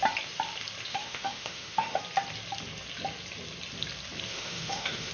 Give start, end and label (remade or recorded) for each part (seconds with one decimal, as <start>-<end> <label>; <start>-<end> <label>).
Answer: 0.0-0.9 recorded; 0.9-2.0 remade; 2.0-4.3 recorded; 4.3-5.1 remade